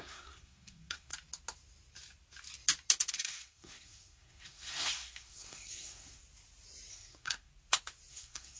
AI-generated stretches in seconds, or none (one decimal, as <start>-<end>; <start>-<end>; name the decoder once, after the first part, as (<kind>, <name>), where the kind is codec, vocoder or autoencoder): 0.0-1.1 (codec, SNAC); 3.1-6.2; 6.9-7.5; 8.1-8.6